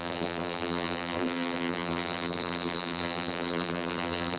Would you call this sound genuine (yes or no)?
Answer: no